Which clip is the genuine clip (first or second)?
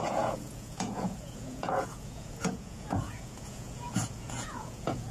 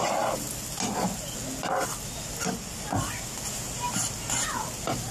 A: second